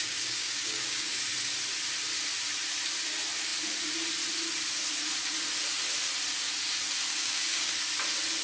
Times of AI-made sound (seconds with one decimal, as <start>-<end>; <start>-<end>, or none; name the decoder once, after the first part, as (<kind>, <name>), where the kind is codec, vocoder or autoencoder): 0.0-1.2 (codec, DAC); 7.1-7.7